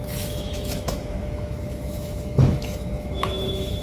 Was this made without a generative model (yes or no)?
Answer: no